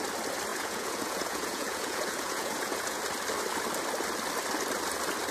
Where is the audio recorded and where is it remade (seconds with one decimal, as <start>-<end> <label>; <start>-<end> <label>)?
0.0-0.5 recorded; 0.5-3.0 remade; 3.0-5.3 recorded